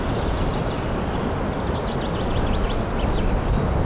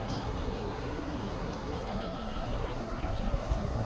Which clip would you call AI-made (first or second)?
second